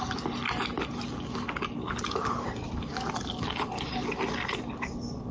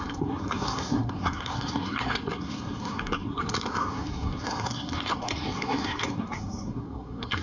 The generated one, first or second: second